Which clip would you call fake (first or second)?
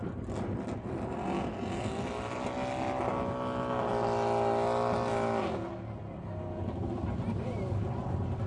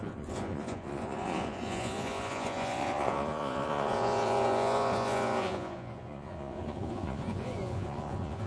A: second